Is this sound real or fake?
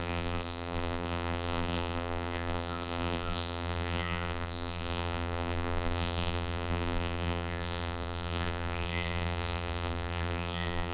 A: fake